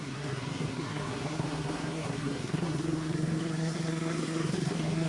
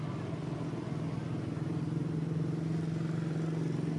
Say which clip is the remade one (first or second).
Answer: first